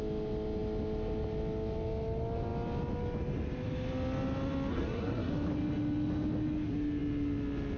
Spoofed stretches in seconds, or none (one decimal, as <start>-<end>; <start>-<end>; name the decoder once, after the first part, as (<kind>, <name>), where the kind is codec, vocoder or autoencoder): 4.7-5.3 (codec, SNAC)